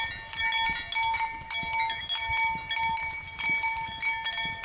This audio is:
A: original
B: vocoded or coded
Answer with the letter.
A